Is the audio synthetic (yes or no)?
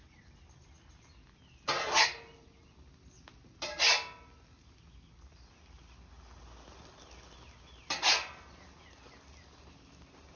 no